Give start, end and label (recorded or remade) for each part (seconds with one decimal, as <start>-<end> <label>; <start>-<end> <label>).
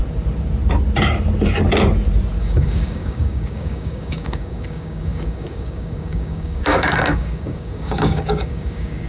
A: 0.0-2.4 recorded; 2.4-9.1 remade